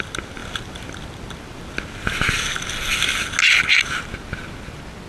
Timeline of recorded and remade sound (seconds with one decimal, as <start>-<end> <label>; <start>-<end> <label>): 0.0-5.1 recorded